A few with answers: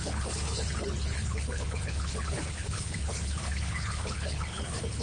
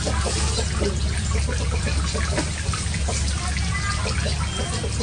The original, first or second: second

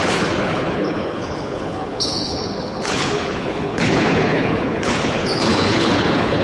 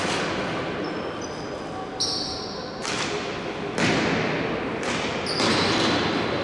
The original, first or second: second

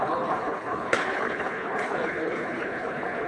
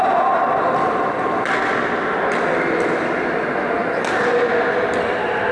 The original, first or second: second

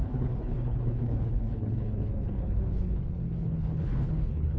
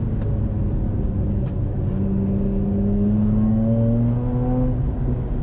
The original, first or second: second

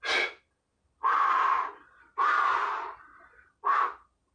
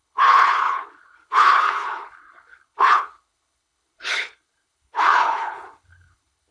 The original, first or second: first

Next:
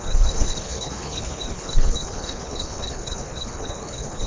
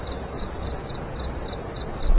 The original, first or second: second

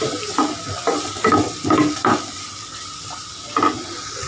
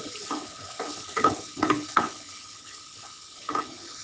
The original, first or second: first